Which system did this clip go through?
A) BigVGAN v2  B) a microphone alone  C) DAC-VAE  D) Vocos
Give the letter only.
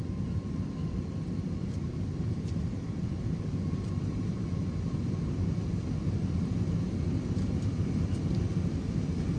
A